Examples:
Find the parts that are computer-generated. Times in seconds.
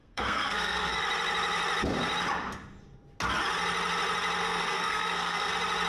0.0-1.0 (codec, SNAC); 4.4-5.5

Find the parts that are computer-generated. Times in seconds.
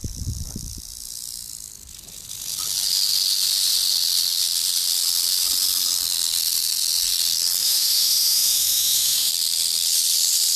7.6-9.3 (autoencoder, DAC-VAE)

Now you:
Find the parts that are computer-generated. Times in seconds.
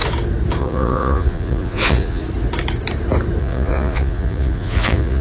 0.6-2.2 (vocoder, Vocos); 3.4-5.2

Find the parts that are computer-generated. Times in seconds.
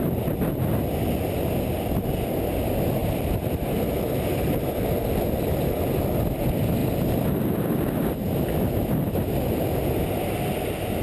3.0-4.7 (vocoder, BigVGAN v2)